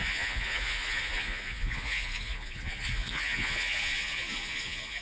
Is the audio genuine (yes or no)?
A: no